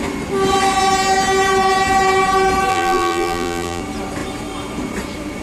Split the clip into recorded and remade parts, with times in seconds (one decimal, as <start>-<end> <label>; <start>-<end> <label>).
0.0-2.7 recorded; 2.7-3.8 remade; 3.8-5.4 recorded